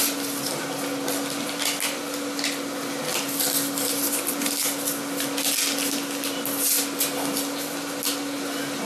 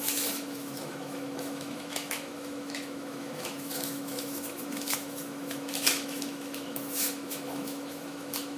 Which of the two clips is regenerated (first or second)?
second